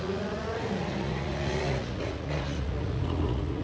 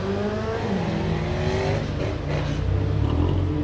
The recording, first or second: second